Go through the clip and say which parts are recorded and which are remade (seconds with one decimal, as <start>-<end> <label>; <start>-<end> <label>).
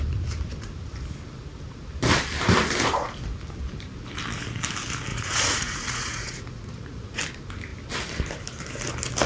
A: 0.0-5.1 recorded; 5.1-7.2 remade; 7.2-9.3 recorded